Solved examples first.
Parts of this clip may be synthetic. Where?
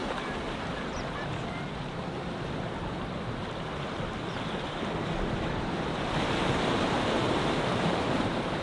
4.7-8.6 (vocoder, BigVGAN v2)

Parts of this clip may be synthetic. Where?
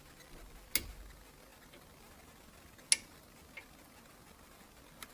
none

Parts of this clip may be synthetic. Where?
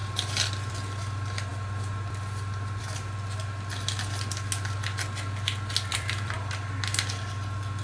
5.9-6.5 (vocoder, BigVGAN v2)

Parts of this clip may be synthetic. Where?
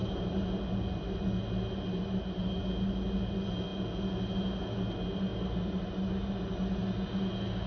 0.0-0.6 (vocoder, BigVGAN v2); 5.3-6.3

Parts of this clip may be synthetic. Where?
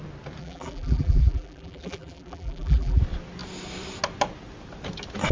0.4-3.0 (vocoder, BigVGAN v2)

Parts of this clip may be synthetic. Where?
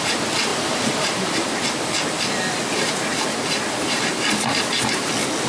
0.5-1.6 (vocoder, BigVGAN v2)